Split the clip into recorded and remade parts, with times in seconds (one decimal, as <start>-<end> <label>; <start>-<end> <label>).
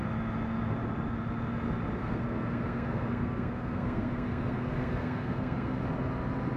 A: 0.0-2.0 recorded; 2.0-5.8 remade; 5.8-6.6 recorded